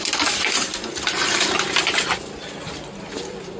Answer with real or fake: real